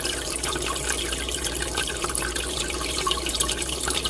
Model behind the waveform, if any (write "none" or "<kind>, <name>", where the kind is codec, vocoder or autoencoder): vocoder, BigVGAN v2